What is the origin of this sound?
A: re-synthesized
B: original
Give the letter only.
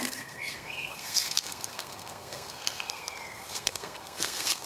A